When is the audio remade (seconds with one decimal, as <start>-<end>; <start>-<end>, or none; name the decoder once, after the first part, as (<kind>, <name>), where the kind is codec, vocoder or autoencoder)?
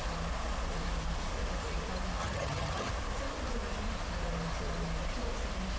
2.2-2.9 (vocoder, HiFi-GAN)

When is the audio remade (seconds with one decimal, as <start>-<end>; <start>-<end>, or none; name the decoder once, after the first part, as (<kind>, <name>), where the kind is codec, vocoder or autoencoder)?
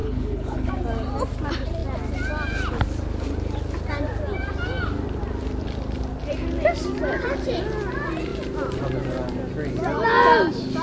0.0-0.7 (codec, HILCodec)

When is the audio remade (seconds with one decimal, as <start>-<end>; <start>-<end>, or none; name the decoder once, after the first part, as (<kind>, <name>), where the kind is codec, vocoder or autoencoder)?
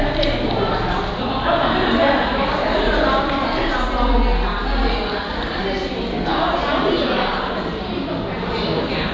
2.2-3.2 (vocoder, BigVGAN v2)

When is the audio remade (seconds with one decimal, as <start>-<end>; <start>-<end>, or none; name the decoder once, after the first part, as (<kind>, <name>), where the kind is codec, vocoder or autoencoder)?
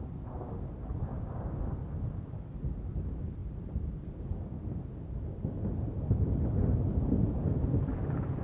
1.1-1.6 (codec, DAC)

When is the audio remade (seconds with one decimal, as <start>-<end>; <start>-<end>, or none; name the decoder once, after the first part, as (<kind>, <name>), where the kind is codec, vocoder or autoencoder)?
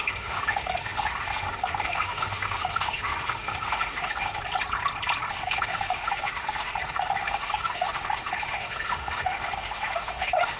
0.0-4.4 (autoencoder, DAC-VAE); 5.3-10.6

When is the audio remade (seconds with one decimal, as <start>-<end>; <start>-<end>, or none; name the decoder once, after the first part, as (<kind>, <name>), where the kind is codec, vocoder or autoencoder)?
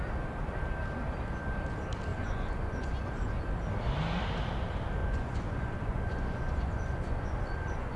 2.1-3.4 (vocoder, Vocos); 5.0-8.0